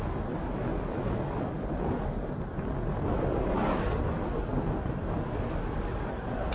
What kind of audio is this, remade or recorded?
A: recorded